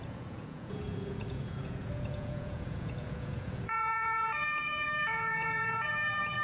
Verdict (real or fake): fake